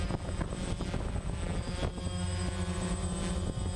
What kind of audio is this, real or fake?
real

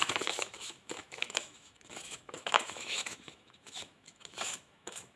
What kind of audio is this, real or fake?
fake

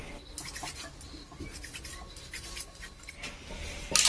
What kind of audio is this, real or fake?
real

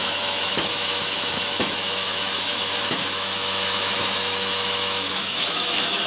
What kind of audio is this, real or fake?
fake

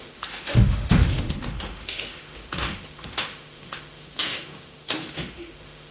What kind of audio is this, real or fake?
fake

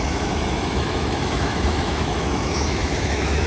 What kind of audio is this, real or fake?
fake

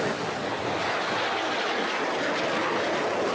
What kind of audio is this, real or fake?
real